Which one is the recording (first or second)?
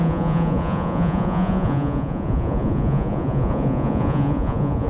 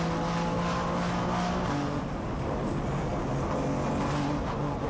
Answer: second